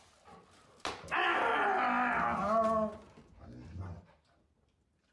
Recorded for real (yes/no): yes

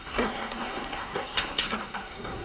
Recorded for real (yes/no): no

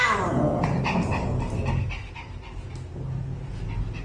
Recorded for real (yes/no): yes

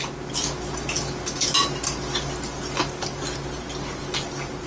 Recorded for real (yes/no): yes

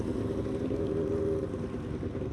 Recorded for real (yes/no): yes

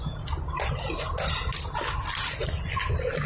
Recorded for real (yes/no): yes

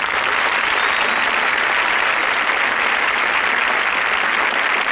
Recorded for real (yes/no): yes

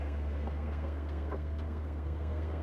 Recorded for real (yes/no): no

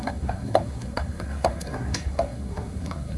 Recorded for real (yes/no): no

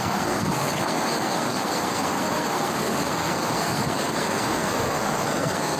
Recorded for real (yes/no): no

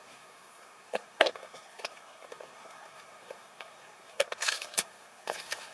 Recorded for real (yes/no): no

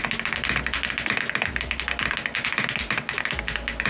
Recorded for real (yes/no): yes